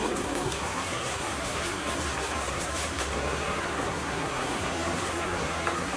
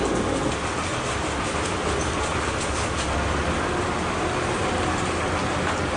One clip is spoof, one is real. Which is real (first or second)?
second